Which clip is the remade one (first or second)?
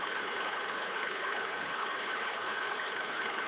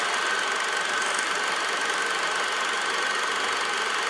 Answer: first